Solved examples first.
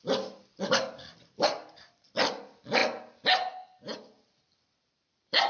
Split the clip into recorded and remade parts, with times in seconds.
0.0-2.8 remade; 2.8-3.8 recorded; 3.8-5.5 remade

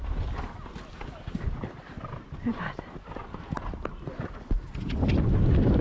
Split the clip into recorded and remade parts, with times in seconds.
0.0-5.8 recorded

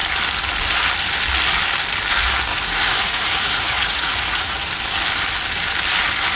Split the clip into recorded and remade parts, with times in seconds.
0.0-2.5 recorded; 2.5-4.7 remade; 4.7-6.3 recorded

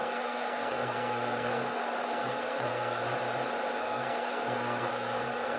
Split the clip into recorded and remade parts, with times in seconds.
0.0-3.0 remade; 3.0-3.8 recorded; 3.8-5.6 remade

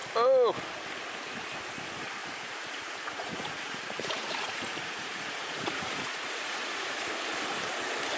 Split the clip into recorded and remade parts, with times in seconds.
0.0-2.2 recorded; 2.2-7.1 remade; 7.1-8.2 recorded

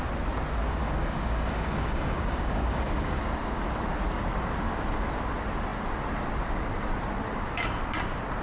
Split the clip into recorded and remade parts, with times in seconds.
0.0-0.8 recorded; 0.8-3.2 remade; 3.2-8.4 recorded

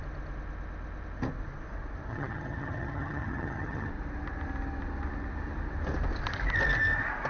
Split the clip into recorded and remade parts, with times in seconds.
0.0-2.1 recorded; 2.1-3.9 remade; 3.9-7.3 recorded